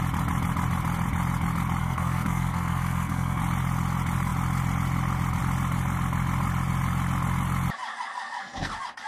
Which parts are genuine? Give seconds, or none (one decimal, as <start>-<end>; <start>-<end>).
0.0-1.8; 3.4-7.9; 8.7-9.1